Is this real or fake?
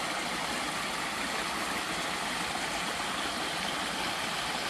real